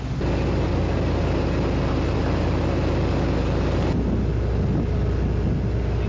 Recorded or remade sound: recorded